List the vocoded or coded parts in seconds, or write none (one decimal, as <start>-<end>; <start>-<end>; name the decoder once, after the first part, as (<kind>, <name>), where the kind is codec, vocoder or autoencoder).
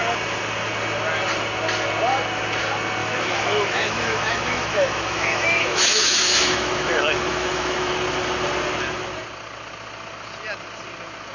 3.0-7.9 (autoencoder, DAC-VAE)